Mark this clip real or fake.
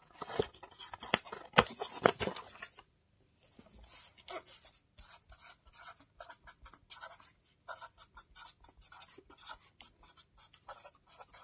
real